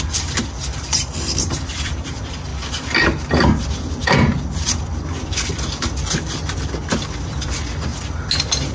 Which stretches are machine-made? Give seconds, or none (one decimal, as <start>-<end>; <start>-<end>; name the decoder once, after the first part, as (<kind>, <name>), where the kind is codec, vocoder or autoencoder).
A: 0.0-2.5 (vocoder, BigVGAN v2); 4.8-7.9